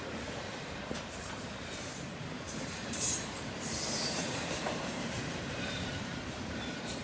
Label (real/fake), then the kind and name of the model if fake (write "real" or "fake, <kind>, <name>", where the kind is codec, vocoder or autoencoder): fake, vocoder, BigVGAN v2